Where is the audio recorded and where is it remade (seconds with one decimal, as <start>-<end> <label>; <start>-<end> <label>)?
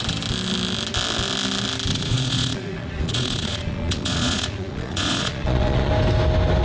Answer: 0.0-1.9 recorded; 1.9-5.9 remade; 5.9-6.6 recorded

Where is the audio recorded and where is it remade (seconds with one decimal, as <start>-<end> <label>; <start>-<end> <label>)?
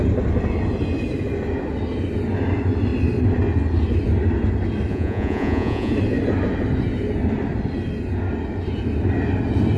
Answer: 0.0-4.9 recorded; 4.9-5.9 remade; 5.9-9.8 recorded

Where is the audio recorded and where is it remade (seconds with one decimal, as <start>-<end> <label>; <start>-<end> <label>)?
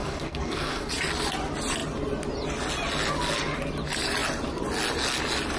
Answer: 0.0-0.9 remade; 0.9-5.6 recorded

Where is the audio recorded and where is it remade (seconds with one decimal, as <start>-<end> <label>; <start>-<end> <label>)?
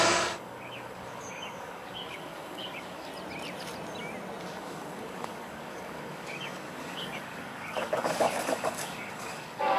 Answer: 0.0-3.1 remade; 3.1-4.4 recorded; 4.4-9.8 remade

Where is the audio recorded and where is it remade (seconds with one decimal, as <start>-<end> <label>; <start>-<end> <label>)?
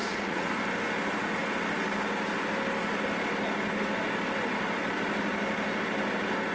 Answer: 0.0-0.5 remade; 0.5-6.5 recorded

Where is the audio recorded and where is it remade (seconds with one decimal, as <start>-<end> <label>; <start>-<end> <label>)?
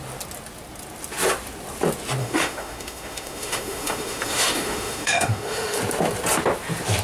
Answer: 0.0-2.2 recorded; 2.2-5.8 remade; 5.8-7.0 recorded